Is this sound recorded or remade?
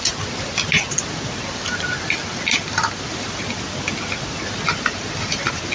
recorded